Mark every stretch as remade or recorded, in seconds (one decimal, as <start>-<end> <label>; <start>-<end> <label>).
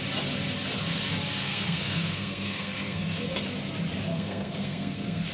0.0-1.4 recorded; 1.4-3.2 remade; 3.2-4.1 recorded; 4.1-5.3 remade